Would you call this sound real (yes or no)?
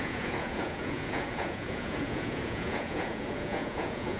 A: no